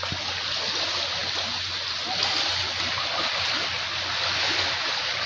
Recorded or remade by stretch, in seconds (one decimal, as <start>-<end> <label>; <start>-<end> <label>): 0.0-5.3 recorded